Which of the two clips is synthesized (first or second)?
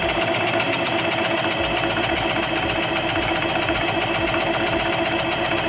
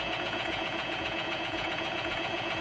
second